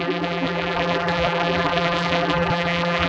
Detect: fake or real fake